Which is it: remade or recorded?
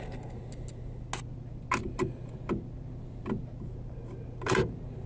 recorded